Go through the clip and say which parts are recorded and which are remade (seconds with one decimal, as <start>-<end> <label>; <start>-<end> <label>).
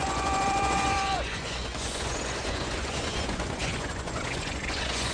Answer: 0.0-5.1 remade